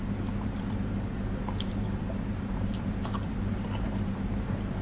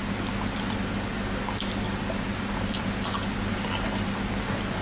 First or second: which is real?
second